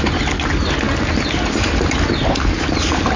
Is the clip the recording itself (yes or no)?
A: yes